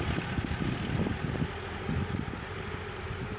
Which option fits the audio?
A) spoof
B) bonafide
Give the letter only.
B